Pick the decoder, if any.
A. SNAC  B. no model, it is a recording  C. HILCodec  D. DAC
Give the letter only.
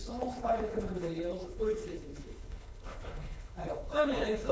C